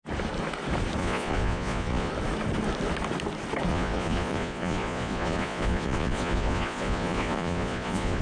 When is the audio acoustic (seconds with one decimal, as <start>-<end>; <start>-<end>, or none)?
0.0-1.0; 2.1-3.7